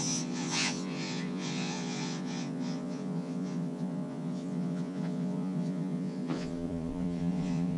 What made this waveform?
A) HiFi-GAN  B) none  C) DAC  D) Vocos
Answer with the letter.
D